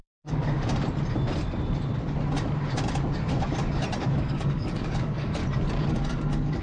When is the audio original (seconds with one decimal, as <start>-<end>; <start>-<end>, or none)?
0.7-4.0; 5.4-5.9